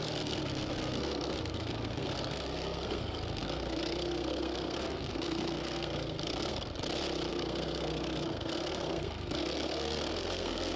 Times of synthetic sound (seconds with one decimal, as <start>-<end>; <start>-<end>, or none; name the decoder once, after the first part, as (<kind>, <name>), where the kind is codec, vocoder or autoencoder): 0.0-6.7 (codec, SNAC); 7.3-10.8